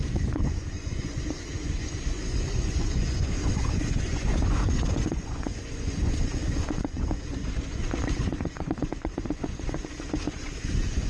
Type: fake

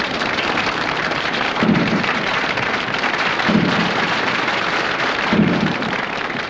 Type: fake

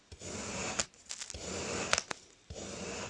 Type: real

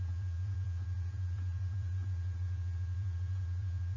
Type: fake